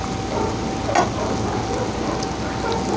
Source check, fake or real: real